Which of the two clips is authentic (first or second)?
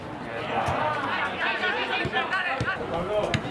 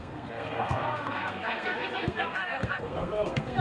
first